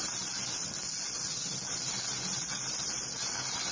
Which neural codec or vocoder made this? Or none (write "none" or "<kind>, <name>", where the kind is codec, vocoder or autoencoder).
none